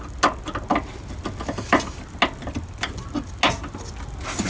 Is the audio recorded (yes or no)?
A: yes